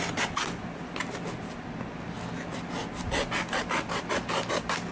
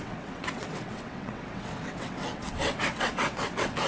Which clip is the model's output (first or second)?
second